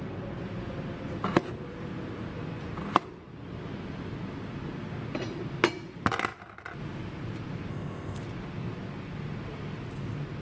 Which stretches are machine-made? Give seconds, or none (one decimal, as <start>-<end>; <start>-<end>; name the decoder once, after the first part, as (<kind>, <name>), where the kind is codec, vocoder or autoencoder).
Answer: 7.7-8.2 (codec, ZipCodec)